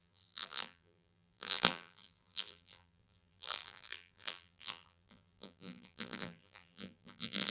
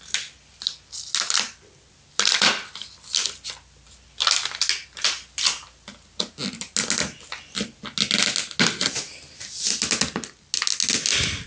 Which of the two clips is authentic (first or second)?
second